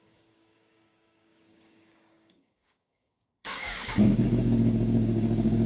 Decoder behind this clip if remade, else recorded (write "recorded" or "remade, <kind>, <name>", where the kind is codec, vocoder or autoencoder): remade, codec, DAC